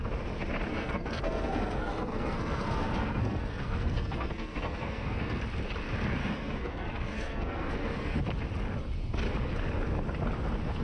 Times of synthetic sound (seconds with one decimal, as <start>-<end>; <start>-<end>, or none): 0.7-5.4; 6.2-8.2